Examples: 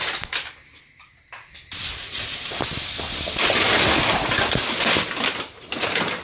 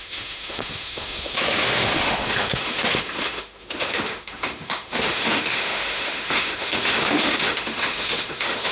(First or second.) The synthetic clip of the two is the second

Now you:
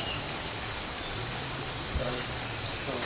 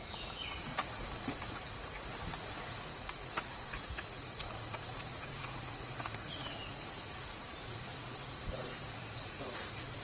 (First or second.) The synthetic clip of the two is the second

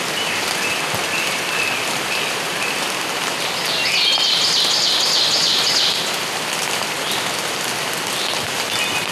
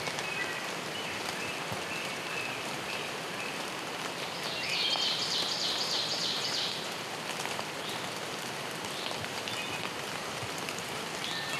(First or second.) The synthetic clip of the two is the second